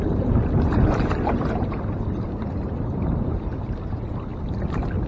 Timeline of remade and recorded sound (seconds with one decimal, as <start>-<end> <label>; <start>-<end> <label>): 0.0-4.3 remade; 4.3-5.1 recorded